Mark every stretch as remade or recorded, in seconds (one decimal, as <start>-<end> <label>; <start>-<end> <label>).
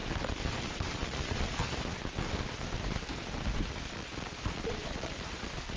0.0-0.6 recorded; 0.6-1.6 remade; 1.6-3.9 recorded; 3.9-5.8 remade